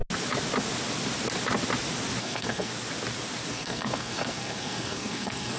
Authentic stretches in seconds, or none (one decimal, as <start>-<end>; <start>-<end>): 0.0-2.2; 2.7-3.5